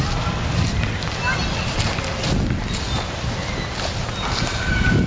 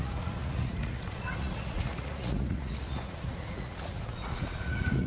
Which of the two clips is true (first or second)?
first